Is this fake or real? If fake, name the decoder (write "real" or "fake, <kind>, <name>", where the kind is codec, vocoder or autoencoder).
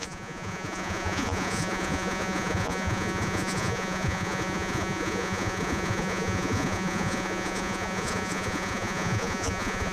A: fake, vocoder, Vocos